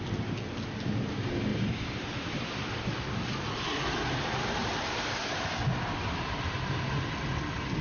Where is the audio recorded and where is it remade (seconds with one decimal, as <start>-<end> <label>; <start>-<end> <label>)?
0.0-1.5 recorded; 1.5-2.6 remade; 2.6-4.6 recorded; 4.6-5.2 remade; 5.2-7.8 recorded